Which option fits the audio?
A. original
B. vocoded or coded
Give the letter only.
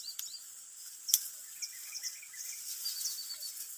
A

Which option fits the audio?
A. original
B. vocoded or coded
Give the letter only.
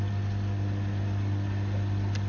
A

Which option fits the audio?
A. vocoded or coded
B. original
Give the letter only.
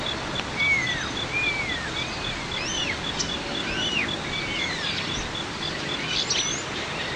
B